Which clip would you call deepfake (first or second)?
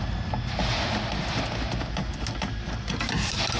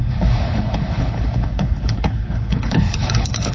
second